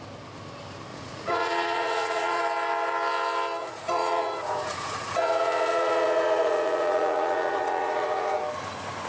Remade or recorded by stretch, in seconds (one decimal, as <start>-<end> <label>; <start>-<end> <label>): 0.0-0.9 recorded; 0.9-2.4 remade; 2.4-3.6 recorded; 3.6-8.4 remade; 8.4-9.1 recorded